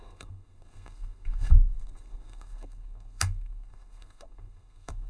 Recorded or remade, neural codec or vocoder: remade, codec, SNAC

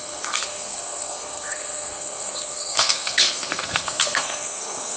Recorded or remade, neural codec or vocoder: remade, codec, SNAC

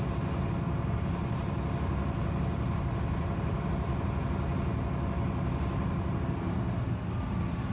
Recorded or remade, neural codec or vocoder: recorded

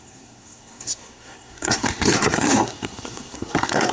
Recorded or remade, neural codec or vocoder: remade, codec, SNAC